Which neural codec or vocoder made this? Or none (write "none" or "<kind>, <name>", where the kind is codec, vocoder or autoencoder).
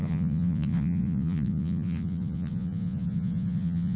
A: vocoder, Vocos